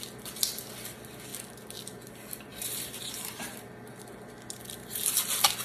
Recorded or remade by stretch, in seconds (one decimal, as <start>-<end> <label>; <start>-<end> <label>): 0.0-2.5 recorded; 2.5-3.7 remade; 3.7-5.6 recorded